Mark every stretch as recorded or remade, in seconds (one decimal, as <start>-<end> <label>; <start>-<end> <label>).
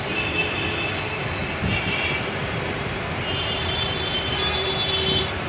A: 0.0-1.4 recorded; 1.4-4.7 remade; 4.7-5.5 recorded